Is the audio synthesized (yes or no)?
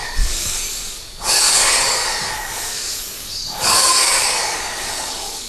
yes